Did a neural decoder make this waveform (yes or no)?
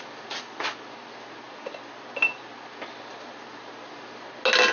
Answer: no